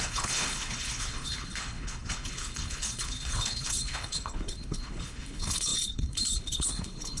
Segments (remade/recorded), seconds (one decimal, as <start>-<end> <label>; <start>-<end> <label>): 0.0-7.2 remade